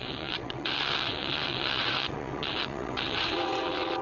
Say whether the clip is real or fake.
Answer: fake